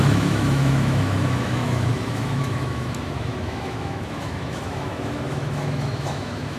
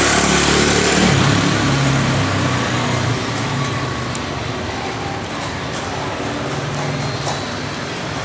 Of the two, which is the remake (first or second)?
first